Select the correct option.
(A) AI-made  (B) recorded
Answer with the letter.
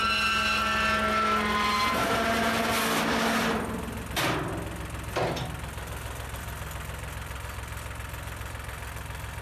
B